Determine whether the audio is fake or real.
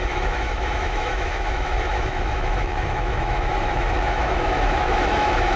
fake